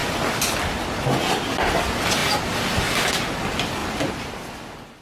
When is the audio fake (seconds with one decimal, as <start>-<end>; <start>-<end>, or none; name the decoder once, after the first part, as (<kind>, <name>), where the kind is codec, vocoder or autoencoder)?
none

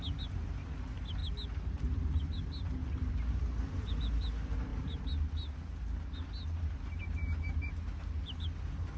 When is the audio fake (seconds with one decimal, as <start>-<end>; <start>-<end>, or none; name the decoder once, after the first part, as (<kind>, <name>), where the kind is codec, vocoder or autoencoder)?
none

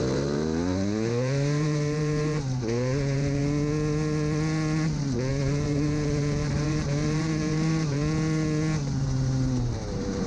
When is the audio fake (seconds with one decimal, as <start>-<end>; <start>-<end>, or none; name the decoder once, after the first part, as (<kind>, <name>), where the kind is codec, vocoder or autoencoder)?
0.0-3.4 (vocoder, BigVGAN v2); 5.3-8.0; 9.0-10.3

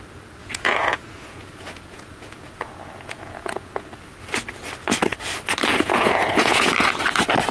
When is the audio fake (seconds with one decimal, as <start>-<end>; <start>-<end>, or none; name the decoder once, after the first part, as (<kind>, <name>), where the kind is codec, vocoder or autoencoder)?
0.4-3.9 (vocoder, Vocos); 5.7-6.7

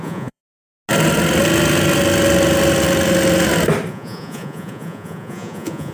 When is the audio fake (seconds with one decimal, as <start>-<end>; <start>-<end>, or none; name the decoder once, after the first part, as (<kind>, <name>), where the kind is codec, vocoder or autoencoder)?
0.0-0.4 (vocoder, Vocos); 3.9-5.9